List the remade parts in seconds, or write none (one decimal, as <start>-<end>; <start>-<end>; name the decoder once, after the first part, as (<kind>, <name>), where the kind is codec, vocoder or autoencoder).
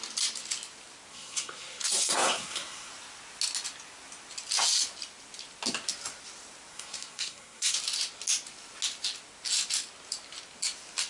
1.1-2.9 (codec, SNAC); 6.7-7.8